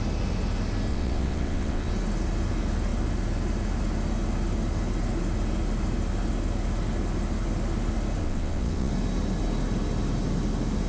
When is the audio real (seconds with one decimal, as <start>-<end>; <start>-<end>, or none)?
0.0-0.9; 1.9-8.2; 8.9-10.9